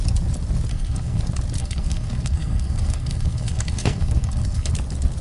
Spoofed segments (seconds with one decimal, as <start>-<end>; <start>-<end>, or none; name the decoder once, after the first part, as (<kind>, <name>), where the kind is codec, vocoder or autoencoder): 0.7-1.2 (codec, SNAC); 1.6-4.7

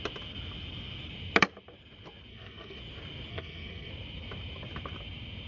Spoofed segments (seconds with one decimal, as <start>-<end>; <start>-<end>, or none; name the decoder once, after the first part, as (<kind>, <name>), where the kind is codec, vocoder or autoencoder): 2.3-2.8 (codec, SNAC); 3.3-3.9

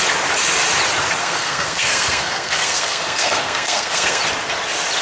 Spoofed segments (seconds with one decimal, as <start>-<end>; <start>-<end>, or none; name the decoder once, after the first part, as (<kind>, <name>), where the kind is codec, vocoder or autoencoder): 1.2-4.2 (codec, SNAC)

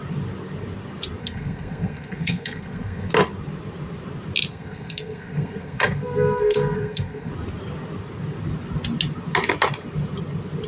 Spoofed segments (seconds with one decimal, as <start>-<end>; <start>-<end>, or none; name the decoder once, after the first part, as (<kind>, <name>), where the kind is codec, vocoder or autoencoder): 1.2-3.1 (codec, SNAC); 4.5-7.3

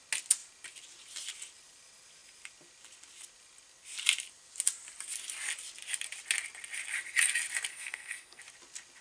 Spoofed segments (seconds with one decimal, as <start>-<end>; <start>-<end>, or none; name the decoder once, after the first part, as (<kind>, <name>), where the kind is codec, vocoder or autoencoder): 7.7-8.4 (codec, SNAC)

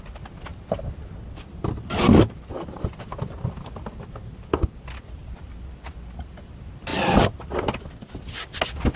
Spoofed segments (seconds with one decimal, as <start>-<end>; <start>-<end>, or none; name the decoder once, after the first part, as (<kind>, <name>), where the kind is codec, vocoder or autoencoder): none

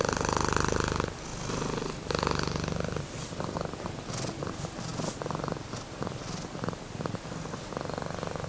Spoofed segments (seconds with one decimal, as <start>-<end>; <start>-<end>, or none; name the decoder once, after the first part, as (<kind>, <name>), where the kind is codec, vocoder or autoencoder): none

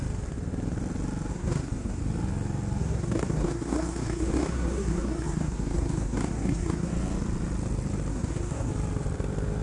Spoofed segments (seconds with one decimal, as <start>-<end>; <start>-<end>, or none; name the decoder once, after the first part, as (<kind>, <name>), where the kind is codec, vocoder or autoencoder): 1.3-2.0 (codec, SNAC); 2.8-6.9; 8.1-8.7